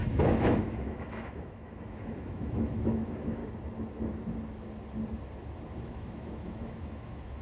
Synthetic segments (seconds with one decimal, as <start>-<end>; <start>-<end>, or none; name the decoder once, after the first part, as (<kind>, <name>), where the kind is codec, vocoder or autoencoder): 0.0-3.4 (autoencoder, DAC-VAE); 5.8-7.4